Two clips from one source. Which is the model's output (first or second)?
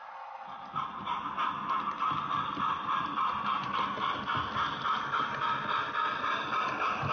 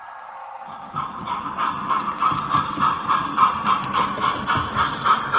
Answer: second